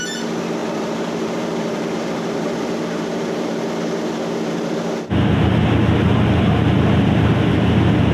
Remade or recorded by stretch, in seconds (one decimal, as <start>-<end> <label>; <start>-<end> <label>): 0.0-0.6 recorded; 0.6-3.5 remade; 3.5-8.1 recorded